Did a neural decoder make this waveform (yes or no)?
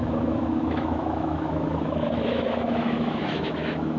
yes